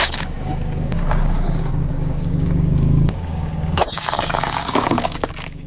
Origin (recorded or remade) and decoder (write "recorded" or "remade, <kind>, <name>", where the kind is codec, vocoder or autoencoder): remade, codec, DAC